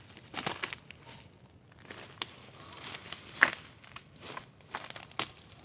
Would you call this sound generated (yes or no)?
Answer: no